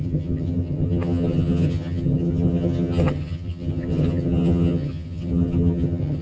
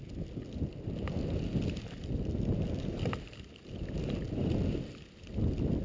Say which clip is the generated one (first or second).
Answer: first